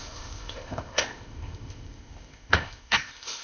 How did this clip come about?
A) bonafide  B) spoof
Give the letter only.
B